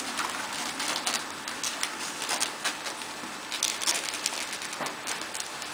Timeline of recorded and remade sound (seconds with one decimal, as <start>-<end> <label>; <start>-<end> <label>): 0.0-5.7 recorded